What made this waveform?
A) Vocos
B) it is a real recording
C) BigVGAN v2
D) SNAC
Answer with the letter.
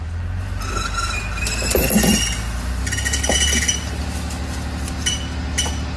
B